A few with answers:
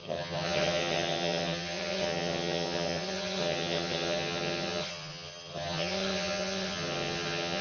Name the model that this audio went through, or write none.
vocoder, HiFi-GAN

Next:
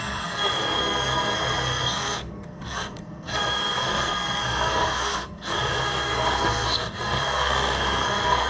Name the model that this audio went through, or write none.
codec, SNAC